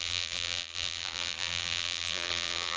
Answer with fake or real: fake